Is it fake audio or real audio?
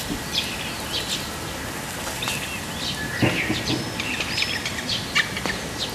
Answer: real